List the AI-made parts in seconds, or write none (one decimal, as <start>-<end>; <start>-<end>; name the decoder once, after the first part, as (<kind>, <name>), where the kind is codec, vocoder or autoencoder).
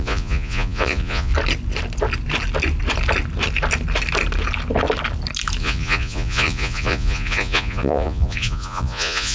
0.0-1.3 (vocoder, Vocos); 5.6-9.3